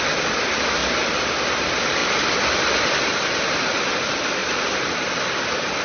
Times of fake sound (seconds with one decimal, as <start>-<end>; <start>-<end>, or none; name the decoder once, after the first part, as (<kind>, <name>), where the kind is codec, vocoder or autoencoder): 0.0-0.8 (vocoder, BigVGAN v2); 1.3-4.4